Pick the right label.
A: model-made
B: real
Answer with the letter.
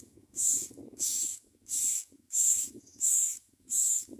A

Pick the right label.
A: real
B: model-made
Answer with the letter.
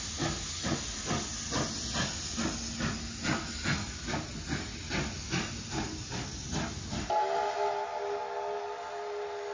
A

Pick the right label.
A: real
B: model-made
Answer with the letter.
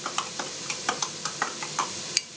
B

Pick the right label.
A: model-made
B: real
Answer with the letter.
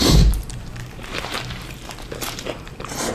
A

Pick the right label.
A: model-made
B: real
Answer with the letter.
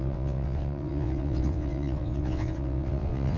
A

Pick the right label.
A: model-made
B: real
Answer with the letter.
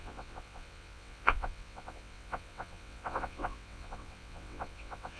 A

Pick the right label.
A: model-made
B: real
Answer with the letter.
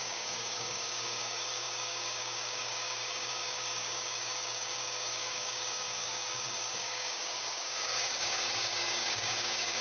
A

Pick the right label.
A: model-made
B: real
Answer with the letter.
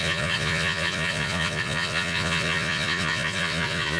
A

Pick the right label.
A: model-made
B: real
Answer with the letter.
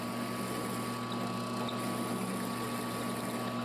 B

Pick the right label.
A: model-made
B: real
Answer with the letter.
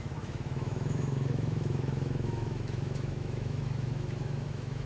A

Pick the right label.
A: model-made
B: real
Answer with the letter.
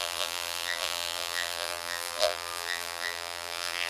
A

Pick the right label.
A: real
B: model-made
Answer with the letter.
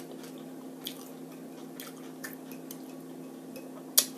A